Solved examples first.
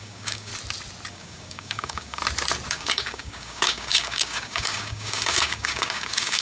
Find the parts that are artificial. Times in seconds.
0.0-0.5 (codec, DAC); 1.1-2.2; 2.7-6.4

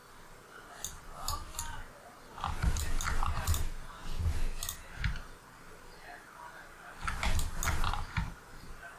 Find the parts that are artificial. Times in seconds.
none

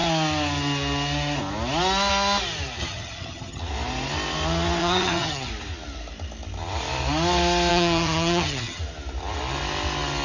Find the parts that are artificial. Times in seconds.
2.8-3.6 (vocoder, HiFi-GAN); 4.8-5.5; 7.7-8.8

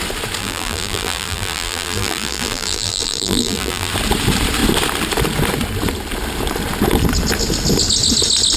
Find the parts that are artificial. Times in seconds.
0.4-3.9 (vocoder, BigVGAN v2)

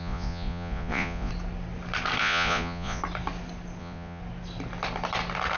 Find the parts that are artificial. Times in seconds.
0.0-1.3 (vocoder, Vocos); 2.2-3.0; 3.8-4.2

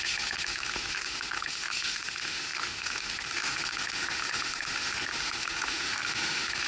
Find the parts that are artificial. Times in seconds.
0.0-6.7 (autoencoder, DAC-VAE)

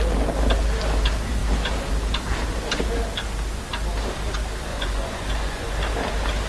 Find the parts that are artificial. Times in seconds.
4.7-5.7 (vocoder, Vocos)